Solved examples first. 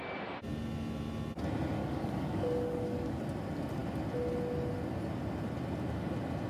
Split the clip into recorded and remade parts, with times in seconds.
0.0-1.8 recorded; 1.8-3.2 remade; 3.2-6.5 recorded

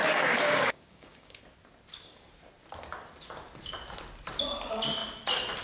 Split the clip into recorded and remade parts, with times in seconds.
0.0-1.4 remade; 1.4-5.6 recorded

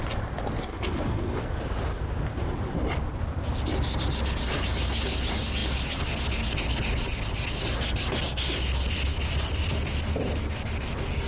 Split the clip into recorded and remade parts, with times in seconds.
0.0-0.7 recorded; 0.7-1.6 remade; 1.6-11.3 recorded

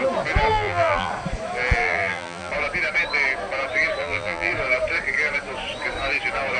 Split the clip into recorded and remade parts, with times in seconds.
0.0-0.5 recorded; 0.5-1.1 remade; 1.1-1.8 recorded; 1.8-2.5 remade; 2.5-4.0 recorded; 4.0-4.5 remade; 4.5-6.6 recorded